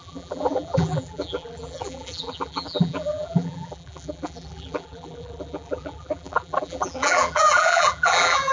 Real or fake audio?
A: fake